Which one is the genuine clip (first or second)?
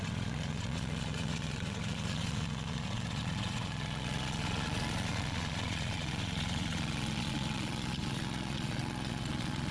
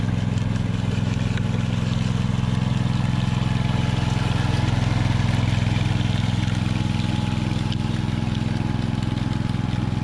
second